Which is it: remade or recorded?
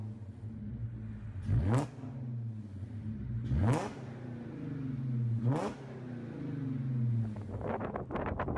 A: recorded